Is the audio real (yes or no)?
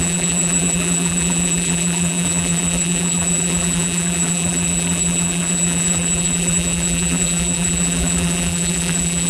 no